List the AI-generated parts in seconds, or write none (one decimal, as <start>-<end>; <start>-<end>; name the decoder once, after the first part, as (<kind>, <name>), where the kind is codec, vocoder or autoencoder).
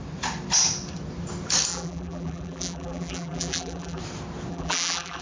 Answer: 1.7-4.0 (vocoder, BigVGAN v2); 4.5-5.2